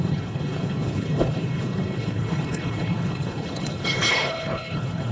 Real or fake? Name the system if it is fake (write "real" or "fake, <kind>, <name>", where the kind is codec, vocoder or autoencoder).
fake, codec, HILCodec